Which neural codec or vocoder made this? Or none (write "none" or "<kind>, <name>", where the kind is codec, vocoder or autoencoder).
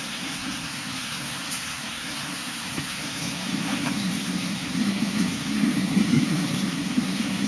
codec, SNAC